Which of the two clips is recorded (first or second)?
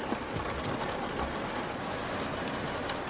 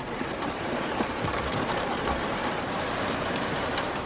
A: first